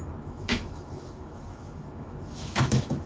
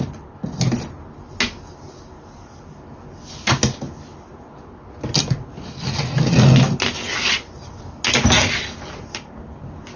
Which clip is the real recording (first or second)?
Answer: second